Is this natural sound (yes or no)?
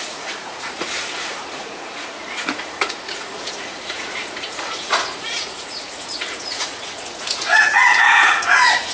no